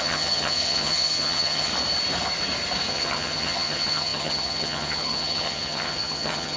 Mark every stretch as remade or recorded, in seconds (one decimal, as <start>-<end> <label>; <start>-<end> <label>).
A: 0.0-1.7 remade; 1.7-2.9 recorded; 2.9-6.6 remade